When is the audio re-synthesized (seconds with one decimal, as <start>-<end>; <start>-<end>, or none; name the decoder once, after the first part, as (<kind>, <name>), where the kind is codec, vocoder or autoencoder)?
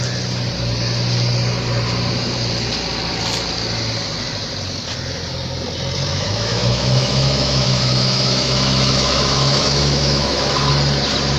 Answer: 6.1-10.7 (autoencoder, DAC-VAE)